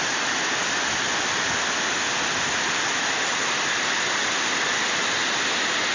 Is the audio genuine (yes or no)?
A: yes